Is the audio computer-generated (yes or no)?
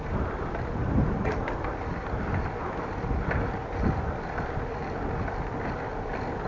no